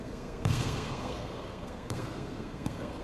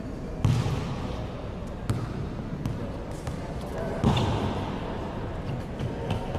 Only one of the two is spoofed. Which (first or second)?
first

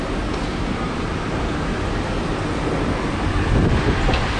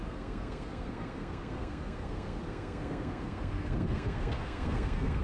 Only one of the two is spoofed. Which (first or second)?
second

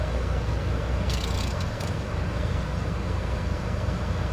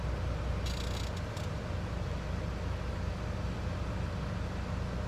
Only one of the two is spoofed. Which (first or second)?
first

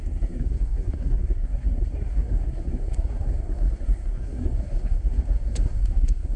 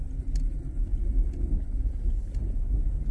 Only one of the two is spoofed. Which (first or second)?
first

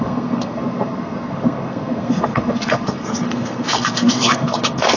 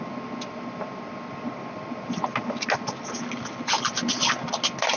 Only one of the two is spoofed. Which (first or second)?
first